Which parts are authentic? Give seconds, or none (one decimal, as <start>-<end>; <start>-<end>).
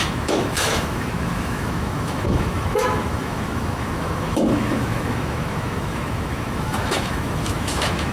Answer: none